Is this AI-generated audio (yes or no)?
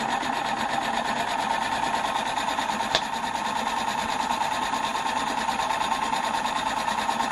no